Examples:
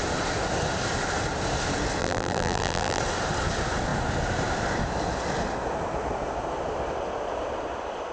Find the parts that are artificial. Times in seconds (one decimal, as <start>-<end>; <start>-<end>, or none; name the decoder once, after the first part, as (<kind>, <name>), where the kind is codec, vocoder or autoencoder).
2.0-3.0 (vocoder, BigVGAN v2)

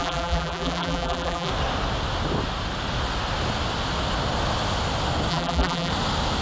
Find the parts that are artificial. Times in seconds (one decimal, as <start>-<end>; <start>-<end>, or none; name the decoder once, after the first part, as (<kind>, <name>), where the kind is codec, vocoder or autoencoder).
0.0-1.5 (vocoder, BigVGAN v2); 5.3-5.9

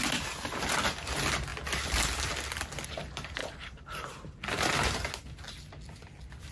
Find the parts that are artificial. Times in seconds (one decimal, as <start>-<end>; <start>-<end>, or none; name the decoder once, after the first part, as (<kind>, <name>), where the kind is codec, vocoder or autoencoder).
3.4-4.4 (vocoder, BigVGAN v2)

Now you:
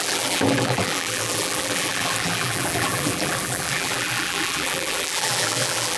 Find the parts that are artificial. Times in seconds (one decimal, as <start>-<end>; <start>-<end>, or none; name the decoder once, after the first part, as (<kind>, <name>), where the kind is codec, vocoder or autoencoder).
0.0-6.0 (vocoder, BigVGAN v2)

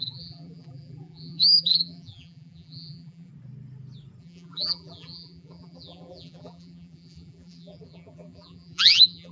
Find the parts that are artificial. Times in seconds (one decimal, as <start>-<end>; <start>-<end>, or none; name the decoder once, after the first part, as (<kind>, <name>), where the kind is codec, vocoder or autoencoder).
0.0-3.3 (vocoder, BigVGAN v2); 4.2-9.3

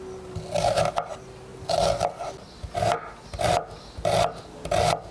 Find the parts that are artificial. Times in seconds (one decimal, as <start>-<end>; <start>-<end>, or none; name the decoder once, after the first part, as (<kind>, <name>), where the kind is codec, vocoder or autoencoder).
none